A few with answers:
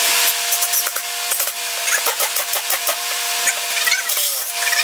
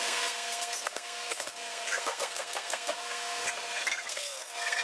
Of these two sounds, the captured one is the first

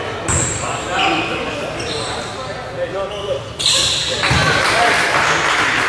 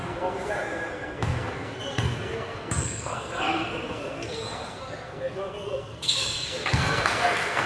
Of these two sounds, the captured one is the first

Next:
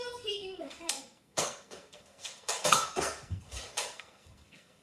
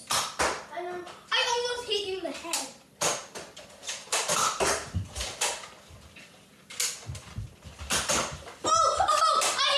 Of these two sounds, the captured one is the second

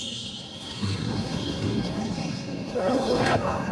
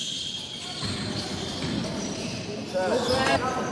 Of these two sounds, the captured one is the second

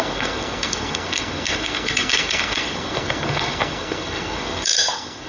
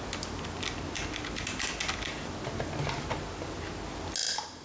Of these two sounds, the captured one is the second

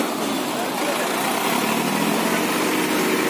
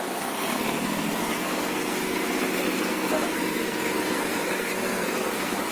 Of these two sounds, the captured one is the first